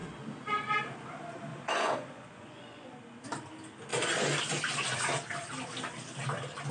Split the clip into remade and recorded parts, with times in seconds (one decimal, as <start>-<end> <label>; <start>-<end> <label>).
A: 0.0-1.5 recorded; 1.5-2.9 remade; 2.9-6.7 recorded